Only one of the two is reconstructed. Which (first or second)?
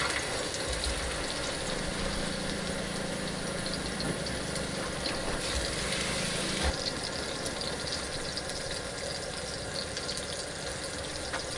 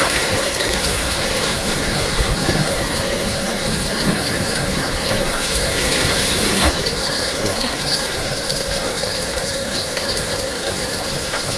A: second